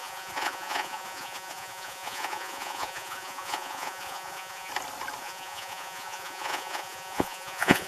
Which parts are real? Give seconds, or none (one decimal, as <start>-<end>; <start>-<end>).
4.7-5.2